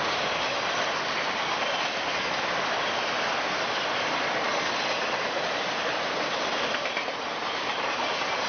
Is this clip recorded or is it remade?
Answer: recorded